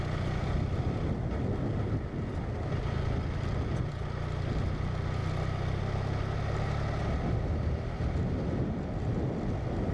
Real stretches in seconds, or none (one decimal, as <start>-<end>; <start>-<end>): 0.0-9.9